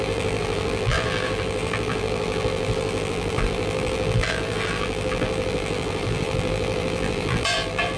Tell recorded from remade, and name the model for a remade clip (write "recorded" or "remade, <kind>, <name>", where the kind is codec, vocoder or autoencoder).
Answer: remade, vocoder, BigVGAN v2